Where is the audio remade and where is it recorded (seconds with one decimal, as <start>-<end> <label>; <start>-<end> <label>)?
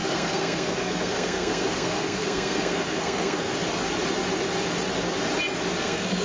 0.0-3.5 remade; 3.5-5.8 recorded; 5.8-6.2 remade